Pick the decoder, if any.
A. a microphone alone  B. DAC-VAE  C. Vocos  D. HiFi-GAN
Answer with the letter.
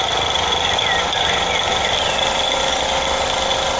A